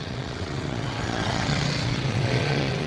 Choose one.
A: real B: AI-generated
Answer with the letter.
B